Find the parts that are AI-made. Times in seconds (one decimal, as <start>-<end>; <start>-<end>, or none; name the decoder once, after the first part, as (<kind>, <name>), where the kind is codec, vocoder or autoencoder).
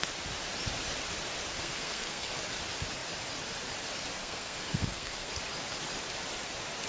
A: 1.5-2.3 (codec, SNAC); 4.2-5.3